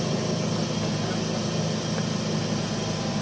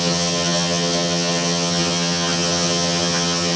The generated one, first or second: second